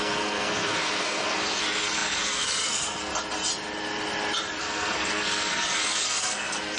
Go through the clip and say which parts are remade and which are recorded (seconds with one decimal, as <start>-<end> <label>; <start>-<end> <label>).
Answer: 0.0-3.1 remade; 3.1-4.6 recorded; 4.6-6.8 remade